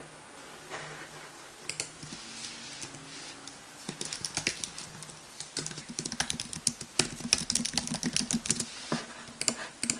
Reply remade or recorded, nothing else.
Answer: recorded